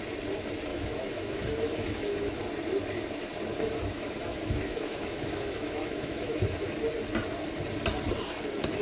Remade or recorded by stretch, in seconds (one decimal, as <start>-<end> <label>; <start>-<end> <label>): 0.0-0.7 recorded; 0.7-2.4 remade; 2.4-3.5 recorded; 3.5-6.7 remade; 6.7-8.8 recorded